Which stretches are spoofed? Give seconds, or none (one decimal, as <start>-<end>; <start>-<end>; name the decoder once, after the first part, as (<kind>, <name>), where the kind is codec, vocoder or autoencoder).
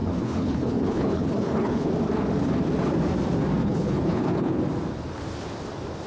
0.0-1.9 (codec, HILCodec); 3.6-4.6